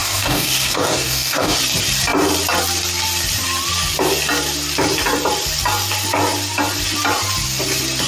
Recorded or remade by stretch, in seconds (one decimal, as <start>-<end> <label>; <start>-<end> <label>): 0.0-1.6 remade; 1.6-8.1 recorded